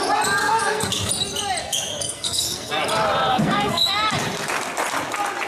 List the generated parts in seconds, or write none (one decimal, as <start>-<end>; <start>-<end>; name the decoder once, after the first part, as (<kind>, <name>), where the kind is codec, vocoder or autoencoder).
0.4-1.1 (codec, SNAC); 1.6-2.7; 3.3-3.9